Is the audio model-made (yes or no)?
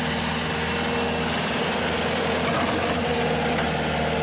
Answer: no